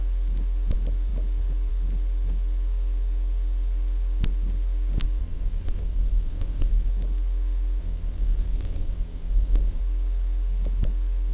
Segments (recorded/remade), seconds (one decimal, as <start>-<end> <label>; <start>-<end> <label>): 0.0-5.2 recorded; 5.2-6.9 remade; 6.9-7.8 recorded; 7.8-9.8 remade; 9.8-11.3 recorded